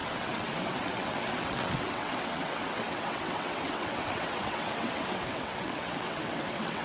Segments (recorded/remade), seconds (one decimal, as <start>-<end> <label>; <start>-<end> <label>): 0.0-6.8 remade